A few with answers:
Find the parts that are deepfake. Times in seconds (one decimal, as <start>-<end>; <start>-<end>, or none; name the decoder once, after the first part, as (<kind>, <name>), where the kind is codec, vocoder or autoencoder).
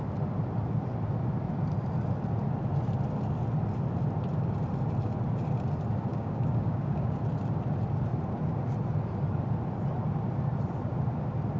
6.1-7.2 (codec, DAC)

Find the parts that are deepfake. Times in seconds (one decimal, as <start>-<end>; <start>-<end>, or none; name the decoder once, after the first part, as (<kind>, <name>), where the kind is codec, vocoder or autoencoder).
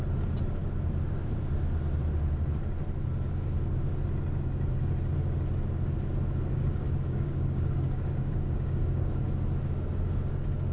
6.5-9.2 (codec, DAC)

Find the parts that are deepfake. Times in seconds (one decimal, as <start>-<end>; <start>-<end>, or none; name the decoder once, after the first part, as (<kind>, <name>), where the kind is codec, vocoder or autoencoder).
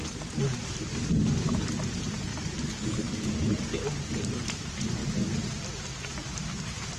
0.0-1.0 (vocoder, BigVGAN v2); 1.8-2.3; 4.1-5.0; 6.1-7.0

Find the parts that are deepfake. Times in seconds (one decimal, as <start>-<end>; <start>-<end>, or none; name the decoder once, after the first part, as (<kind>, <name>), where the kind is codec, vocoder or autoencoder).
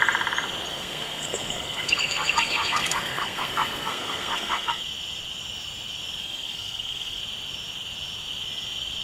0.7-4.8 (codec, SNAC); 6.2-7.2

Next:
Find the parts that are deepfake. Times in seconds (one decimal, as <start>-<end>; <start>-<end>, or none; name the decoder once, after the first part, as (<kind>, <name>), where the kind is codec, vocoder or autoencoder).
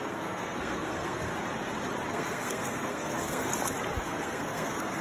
0.0-1.3 (codec, SNAC); 2.1-3.5; 4.0-5.0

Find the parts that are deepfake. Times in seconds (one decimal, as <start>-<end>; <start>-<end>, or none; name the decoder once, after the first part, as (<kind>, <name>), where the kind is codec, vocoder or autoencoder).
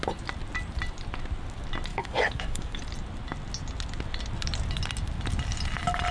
1.9-2.8 (codec, DAC)